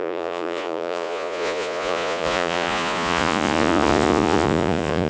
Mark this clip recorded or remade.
remade